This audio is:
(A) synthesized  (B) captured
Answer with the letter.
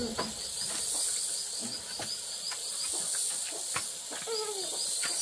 B